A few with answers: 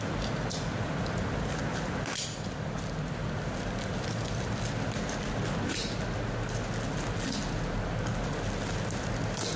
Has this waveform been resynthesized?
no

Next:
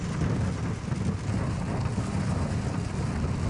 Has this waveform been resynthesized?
no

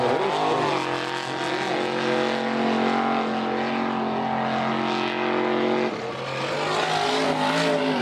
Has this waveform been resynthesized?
no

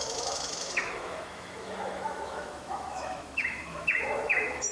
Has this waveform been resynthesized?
yes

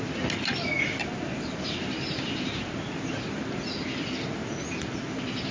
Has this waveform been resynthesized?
no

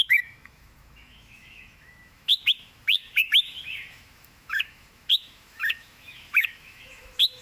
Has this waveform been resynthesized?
yes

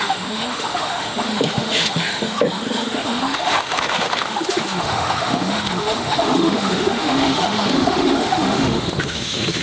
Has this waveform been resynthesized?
yes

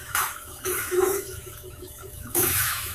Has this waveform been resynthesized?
yes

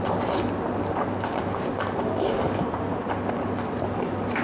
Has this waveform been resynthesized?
no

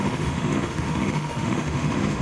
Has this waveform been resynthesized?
yes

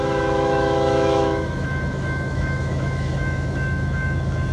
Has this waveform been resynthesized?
yes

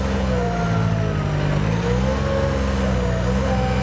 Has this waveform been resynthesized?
no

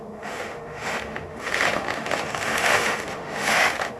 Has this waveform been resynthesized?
yes